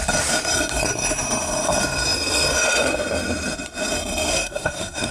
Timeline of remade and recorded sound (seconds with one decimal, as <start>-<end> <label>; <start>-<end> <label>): 0.0-4.3 recorded; 4.3-5.1 remade